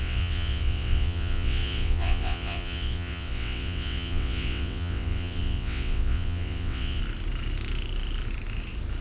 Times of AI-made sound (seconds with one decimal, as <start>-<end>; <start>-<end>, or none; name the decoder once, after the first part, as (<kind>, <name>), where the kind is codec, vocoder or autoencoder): 0.0-7.0 (vocoder, WaveNeXt)